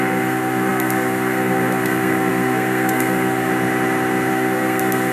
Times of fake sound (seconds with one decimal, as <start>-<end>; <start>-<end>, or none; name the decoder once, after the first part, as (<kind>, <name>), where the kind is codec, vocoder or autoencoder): 0.0-3.5 (codec, SNAC); 4.3-5.1